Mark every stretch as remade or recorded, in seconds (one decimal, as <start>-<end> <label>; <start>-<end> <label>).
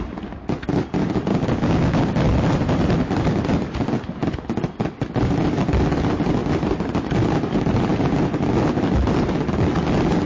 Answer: 0.0-1.3 recorded; 1.3-2.1 remade; 2.1-10.2 recorded